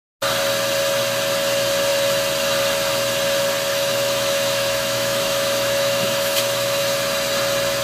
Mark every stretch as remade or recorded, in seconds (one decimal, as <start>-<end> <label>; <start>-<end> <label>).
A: 0.0-3.7 recorded; 3.7-6.8 remade; 6.8-7.8 recorded